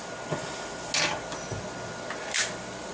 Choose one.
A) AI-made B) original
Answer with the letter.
B